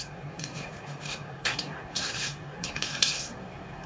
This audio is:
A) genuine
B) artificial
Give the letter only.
B